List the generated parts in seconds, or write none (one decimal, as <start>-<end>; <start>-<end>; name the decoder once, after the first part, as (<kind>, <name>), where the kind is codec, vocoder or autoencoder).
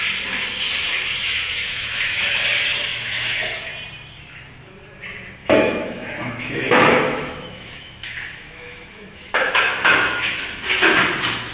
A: 1.2-2.2 (autoencoder, DAC-VAE); 2.9-3.7; 5.4-10.4